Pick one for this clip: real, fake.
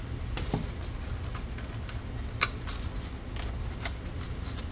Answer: real